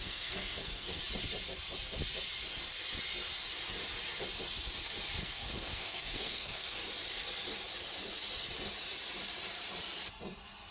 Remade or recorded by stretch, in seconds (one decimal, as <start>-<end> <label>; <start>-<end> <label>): 0.0-1.0 remade; 1.0-5.2 recorded; 5.2-6.8 remade; 6.8-10.7 recorded